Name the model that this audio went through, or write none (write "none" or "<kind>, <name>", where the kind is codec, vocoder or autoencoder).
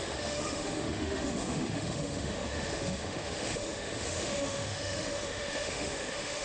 autoencoder, DAC-VAE